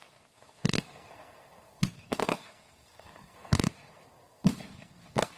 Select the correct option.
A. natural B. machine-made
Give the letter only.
B